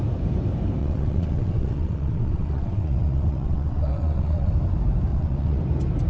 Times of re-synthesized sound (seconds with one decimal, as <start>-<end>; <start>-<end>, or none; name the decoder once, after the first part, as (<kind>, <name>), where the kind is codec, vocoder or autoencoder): 0.8-4.5 (vocoder, WaveNeXt); 5.1-5.6